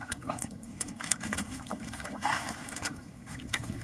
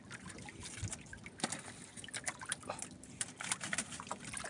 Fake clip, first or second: first